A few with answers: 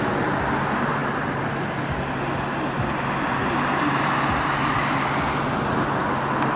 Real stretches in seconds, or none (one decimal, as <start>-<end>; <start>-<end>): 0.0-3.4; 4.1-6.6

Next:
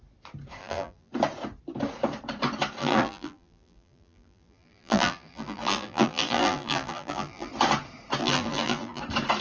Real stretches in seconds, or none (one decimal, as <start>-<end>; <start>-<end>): 0.0-0.6; 1.1-2.8; 7.5-8.2; 9.0-9.4

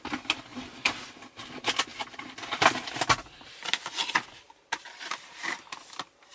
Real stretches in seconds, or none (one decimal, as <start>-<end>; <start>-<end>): 0.0-1.9; 2.9-4.0

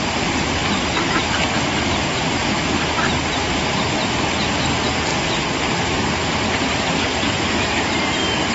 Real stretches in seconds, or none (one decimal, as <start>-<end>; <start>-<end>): 2.4-3.3; 5.1-5.8

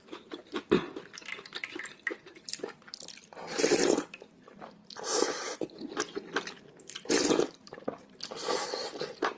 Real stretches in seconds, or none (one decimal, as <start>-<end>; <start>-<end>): 4.8-6.8